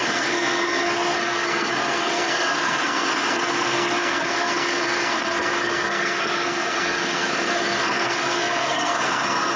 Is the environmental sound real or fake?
fake